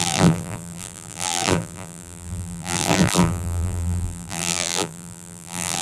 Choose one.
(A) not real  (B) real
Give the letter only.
A